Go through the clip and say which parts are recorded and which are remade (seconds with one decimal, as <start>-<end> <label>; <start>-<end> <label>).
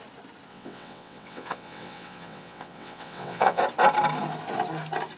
0.0-0.5 recorded; 0.5-3.6 remade; 3.6-5.2 recorded